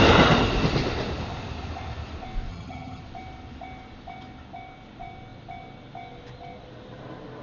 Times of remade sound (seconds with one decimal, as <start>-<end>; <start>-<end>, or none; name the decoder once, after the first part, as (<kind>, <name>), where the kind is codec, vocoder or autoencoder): 2.5-3.0 (vocoder, HiFi-GAN)

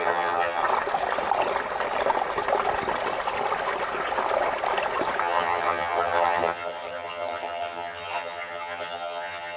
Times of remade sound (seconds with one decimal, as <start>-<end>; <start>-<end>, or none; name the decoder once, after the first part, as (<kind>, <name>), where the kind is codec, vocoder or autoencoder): 0.0-0.6 (vocoder, HiFi-GAN); 5.2-9.6